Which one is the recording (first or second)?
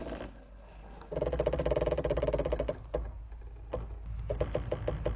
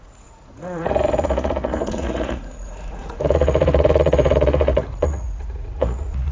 first